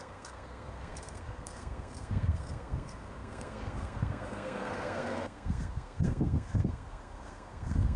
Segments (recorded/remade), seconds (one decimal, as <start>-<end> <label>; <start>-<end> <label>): 0.0-8.0 remade